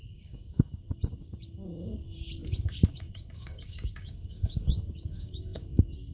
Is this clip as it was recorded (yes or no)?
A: no